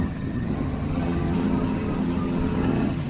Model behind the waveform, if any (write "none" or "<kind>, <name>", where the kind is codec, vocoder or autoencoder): vocoder, HiFi-GAN